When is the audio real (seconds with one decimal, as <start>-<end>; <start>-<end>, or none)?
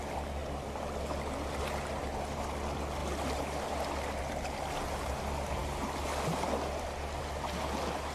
0.0-8.1